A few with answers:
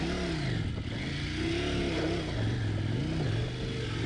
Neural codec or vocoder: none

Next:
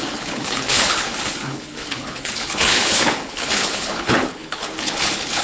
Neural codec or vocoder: codec, HILCodec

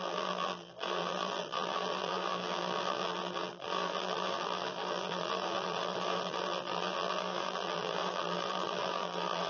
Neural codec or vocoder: vocoder, BigVGAN v2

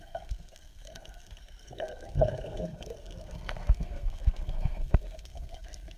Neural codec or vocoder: codec, SNAC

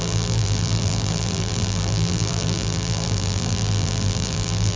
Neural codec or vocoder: vocoder, BigVGAN v2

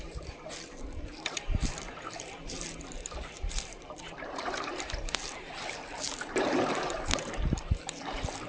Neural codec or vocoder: vocoder, BigVGAN v2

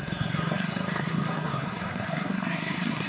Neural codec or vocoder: codec, SNAC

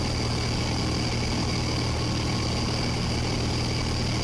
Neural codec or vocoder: none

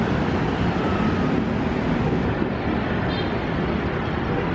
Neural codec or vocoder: vocoder, BigVGAN v2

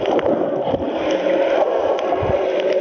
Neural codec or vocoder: none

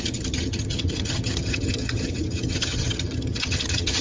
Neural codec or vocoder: vocoder, HiFi-GAN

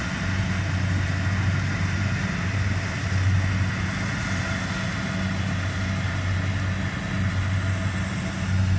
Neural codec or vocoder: none